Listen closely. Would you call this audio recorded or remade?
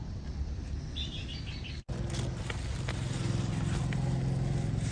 recorded